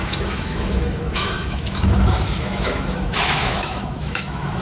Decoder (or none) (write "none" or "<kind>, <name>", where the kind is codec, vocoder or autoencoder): autoencoder, DAC-VAE